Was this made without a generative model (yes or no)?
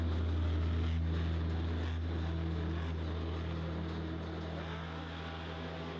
yes